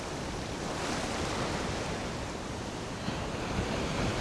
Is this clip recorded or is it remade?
recorded